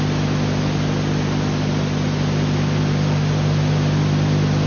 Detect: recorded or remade recorded